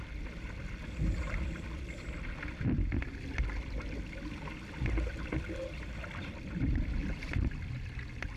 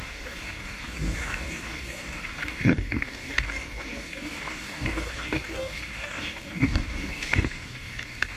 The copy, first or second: second